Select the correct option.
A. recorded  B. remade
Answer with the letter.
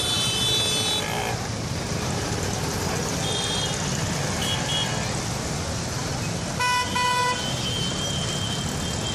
A